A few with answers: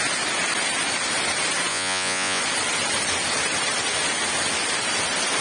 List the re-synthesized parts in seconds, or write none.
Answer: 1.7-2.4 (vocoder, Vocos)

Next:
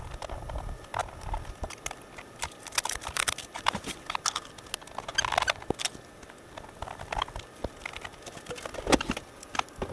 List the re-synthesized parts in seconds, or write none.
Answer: none

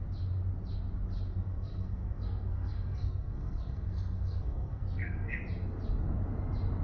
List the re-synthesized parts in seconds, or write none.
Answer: 1.3-5.4 (codec, SNAC)

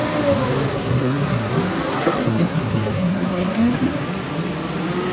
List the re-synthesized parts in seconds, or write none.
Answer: 0.7-1.5 (codec, SNAC); 1.9-4.0